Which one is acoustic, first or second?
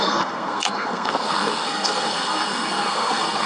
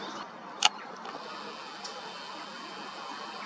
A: second